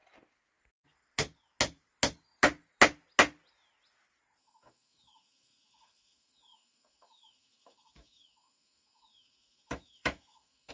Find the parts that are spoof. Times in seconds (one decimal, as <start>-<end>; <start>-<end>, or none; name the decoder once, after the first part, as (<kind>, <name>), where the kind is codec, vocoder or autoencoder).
4.4-10.7 (autoencoder, DAC-VAE)